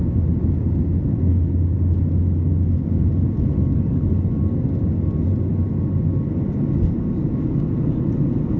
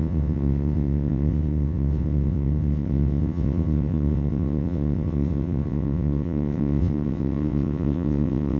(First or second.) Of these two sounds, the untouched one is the first